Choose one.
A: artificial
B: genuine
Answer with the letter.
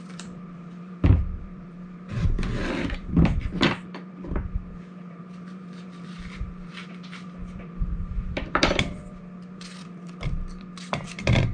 A